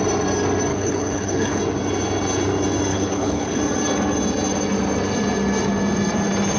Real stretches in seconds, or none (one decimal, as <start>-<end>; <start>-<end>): 0.0-0.7; 1.6-2.9; 3.6-6.6